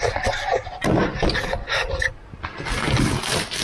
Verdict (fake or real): real